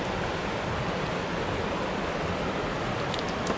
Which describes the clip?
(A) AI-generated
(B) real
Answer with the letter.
B